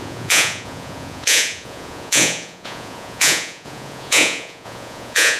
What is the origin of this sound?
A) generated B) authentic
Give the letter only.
A